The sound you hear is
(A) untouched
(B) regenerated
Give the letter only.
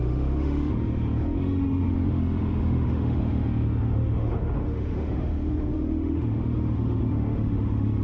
B